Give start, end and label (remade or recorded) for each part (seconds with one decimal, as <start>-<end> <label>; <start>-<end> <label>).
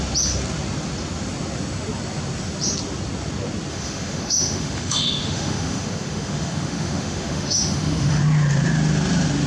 0.0-3.7 recorded; 3.7-8.2 remade; 8.2-9.5 recorded